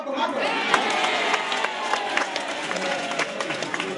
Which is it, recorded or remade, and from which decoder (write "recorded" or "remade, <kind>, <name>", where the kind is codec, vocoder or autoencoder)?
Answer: remade, vocoder, Vocos